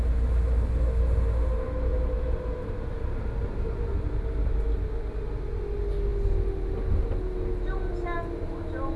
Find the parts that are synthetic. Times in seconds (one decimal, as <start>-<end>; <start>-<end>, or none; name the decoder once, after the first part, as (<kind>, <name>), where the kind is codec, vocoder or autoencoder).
1.9-4.6 (vocoder, BigVGAN v2)